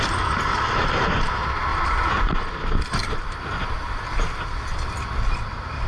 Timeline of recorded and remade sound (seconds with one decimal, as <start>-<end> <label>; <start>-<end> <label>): 0.0-5.9 recorded